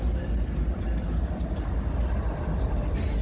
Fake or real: real